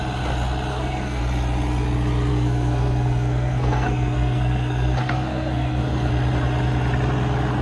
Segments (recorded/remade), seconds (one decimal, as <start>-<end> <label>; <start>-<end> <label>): 0.0-0.7 recorded; 0.7-1.2 remade; 1.2-2.3 recorded; 2.3-6.1 remade; 6.1-7.6 recorded